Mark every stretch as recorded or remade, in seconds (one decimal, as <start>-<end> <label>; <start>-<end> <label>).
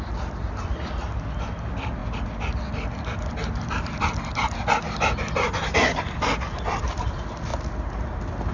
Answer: 0.0-8.5 recorded